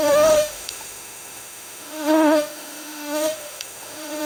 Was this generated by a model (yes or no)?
yes